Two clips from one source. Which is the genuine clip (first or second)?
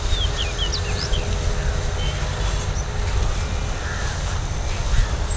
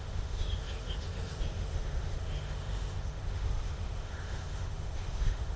first